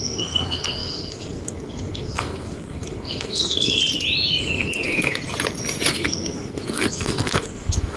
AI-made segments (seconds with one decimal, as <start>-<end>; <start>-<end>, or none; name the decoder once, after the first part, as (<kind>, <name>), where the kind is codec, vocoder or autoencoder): 0.0-3.8 (codec, SNAC); 4.4-5.2; 5.9-8.0